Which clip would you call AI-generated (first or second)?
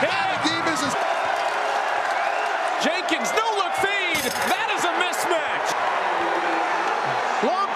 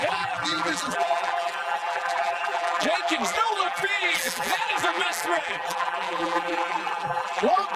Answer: second